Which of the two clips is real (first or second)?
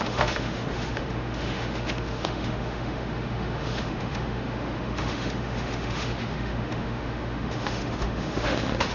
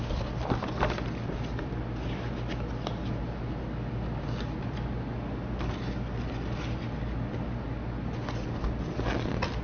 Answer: second